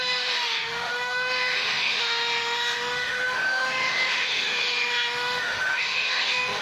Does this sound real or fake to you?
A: fake